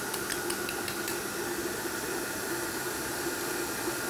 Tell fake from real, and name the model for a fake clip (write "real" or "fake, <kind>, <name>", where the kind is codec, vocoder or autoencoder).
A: real